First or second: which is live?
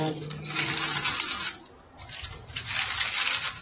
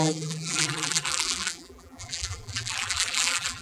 first